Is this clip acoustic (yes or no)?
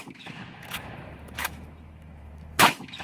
no